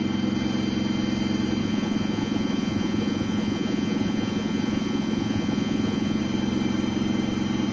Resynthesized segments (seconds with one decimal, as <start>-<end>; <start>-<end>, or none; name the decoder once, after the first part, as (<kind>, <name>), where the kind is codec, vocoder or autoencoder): 1.6-6.2 (vocoder, Vocos)